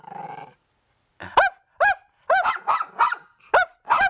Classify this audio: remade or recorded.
recorded